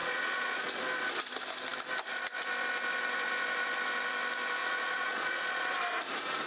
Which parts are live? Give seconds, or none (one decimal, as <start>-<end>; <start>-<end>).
0.8-4.6; 5.6-6.5